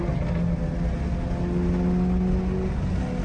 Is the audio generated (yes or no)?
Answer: no